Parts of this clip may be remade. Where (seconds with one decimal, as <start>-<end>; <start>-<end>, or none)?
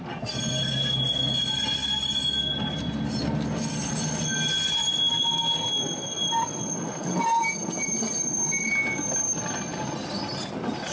none